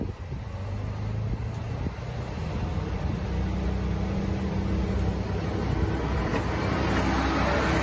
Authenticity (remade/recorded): recorded